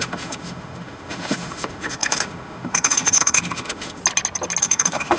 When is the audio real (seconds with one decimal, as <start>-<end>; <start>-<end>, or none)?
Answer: 4.0-4.6